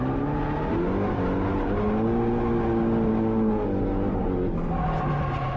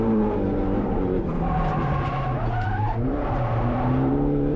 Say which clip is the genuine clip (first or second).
first